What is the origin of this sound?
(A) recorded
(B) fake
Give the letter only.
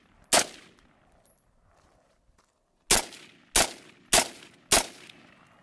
A